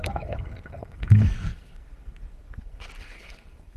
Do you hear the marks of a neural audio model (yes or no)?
yes